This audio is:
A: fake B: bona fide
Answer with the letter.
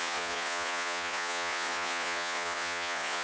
A